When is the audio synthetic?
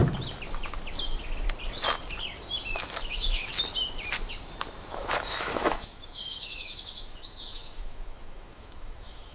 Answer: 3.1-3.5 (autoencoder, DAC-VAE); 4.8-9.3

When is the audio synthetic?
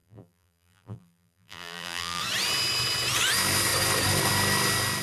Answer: 0.0-2.2 (vocoder, BigVGAN v2)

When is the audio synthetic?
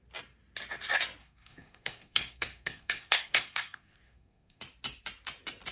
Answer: 1.2-4.6 (codec, SNAC)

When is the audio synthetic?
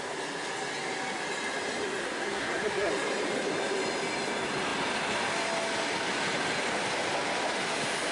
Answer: 2.0-2.9 (codec, SNAC)